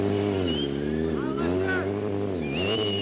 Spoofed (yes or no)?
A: no